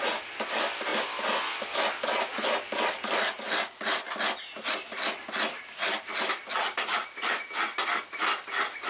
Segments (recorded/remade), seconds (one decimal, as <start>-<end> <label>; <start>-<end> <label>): 0.0-8.9 recorded